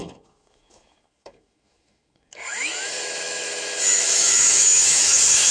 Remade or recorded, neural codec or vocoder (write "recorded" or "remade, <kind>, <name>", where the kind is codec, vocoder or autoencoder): remade, autoencoder, DAC-VAE